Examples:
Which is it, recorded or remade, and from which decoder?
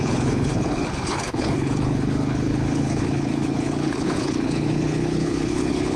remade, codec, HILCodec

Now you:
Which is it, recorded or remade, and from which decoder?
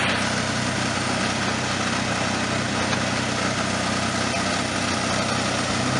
recorded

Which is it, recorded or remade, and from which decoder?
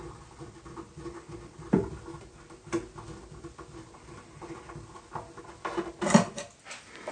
recorded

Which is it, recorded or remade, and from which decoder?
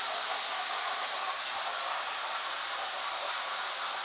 recorded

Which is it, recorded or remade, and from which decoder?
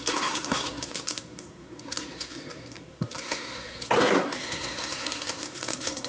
remade, codec, SNAC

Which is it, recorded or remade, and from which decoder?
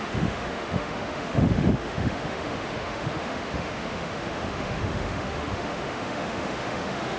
remade, autoencoder, DAC-VAE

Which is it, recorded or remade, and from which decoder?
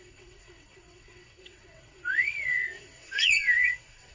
remade, vocoder, WaveNeXt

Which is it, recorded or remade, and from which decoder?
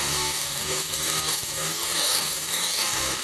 remade, codec, DAC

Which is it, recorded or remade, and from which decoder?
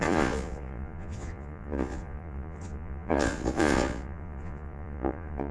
remade, vocoder, Vocos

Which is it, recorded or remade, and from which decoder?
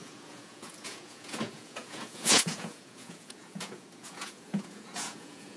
remade, vocoder, Vocos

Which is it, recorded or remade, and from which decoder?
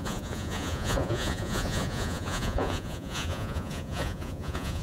remade, vocoder, Vocos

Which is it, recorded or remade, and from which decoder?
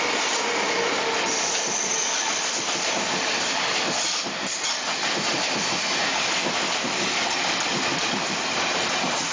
recorded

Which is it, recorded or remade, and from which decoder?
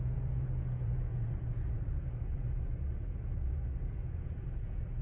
remade, vocoder, Vocos